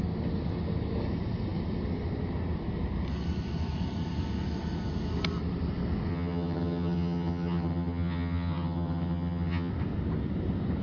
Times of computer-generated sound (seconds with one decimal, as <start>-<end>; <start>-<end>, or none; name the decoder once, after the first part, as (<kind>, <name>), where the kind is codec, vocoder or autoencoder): 6.1-9.7 (vocoder, HiFi-GAN)

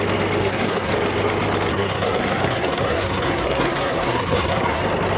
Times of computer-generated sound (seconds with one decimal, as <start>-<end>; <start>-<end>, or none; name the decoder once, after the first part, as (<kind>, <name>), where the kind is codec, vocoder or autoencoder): 0.4-0.9 (codec, SNAC); 1.7-4.8

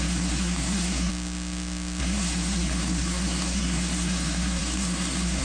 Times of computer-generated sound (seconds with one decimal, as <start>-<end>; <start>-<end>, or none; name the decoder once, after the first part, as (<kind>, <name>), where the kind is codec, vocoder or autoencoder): 0.0-1.1 (codec, SNAC); 2.0-5.4

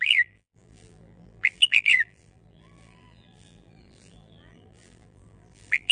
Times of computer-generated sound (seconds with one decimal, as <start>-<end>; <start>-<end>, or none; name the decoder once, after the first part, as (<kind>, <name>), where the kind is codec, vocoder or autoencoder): 0.0-5.9 (vocoder, BigVGAN v2)

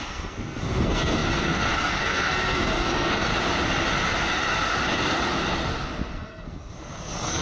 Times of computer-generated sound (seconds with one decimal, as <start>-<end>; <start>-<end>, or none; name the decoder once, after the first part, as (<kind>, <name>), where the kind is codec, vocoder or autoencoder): 0.0-3.3 (codec, SNAC); 6.1-7.4